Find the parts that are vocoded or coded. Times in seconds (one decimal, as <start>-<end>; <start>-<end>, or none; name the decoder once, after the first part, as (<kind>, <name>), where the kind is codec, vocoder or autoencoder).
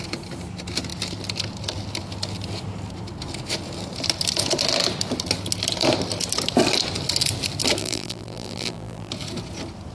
7.8-9.1 (vocoder, BigVGAN v2)